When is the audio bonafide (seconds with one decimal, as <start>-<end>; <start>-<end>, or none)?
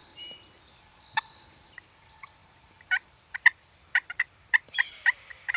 none